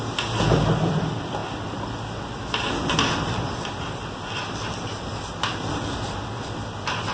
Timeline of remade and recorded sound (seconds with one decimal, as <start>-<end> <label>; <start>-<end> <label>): 0.0-7.1 recorded